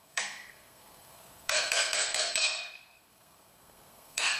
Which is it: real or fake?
fake